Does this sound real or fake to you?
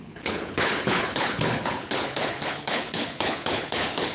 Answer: fake